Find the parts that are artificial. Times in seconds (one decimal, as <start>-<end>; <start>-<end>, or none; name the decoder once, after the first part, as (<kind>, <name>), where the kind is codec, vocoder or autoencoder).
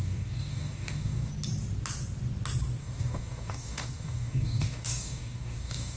0.0-1.3 (codec, DAC); 2.8-6.0